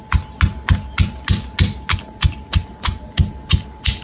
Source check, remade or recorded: recorded